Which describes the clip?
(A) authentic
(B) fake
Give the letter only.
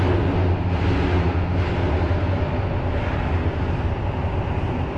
A